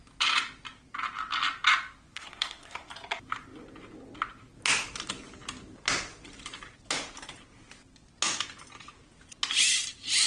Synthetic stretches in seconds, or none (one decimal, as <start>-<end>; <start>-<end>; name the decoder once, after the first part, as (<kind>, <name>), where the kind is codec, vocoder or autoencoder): 2.1-2.9 (codec, SNAC)